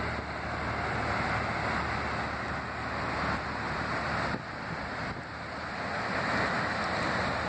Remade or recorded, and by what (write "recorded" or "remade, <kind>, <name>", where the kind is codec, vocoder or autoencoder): recorded